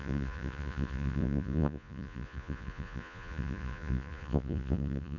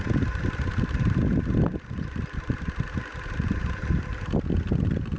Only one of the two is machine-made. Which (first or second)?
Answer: first